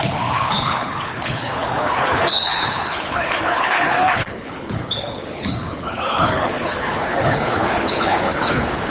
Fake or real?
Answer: fake